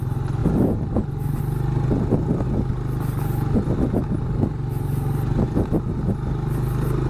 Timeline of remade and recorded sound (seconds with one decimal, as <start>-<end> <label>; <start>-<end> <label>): 0.0-0.4 recorded; 0.4-1.4 remade; 1.4-7.1 recorded